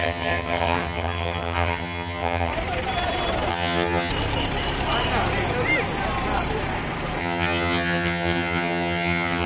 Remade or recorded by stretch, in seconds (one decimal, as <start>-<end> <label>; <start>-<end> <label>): 0.0-2.5 remade; 2.5-3.5 recorded; 3.5-4.1 remade; 4.1-7.2 recorded; 7.2-9.5 remade